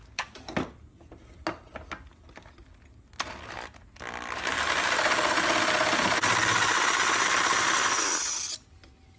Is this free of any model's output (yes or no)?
yes